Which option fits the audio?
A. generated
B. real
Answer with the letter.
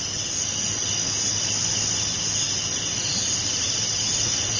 B